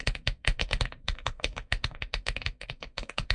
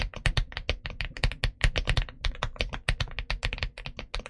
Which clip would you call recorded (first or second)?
second